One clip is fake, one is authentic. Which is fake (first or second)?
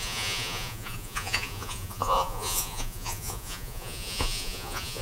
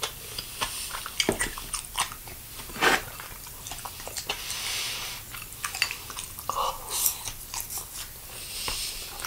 first